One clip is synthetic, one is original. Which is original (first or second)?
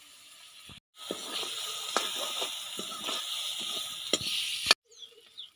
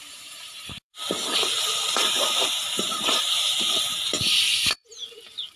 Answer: first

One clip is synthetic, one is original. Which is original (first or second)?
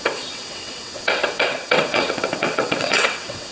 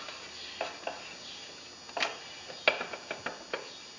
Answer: second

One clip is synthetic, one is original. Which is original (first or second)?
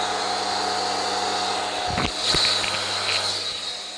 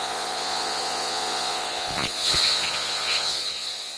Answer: first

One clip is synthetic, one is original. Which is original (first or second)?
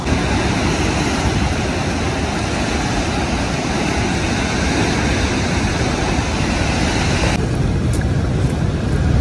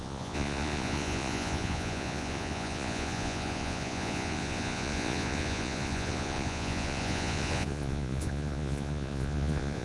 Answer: first